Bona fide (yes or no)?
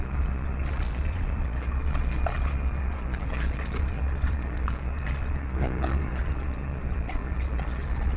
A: no